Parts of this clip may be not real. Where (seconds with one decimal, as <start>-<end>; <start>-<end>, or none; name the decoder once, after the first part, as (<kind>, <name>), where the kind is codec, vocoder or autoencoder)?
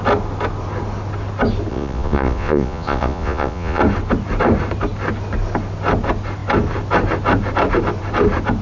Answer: 1.7-3.8 (vocoder, Vocos)